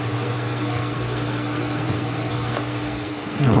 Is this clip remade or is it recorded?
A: remade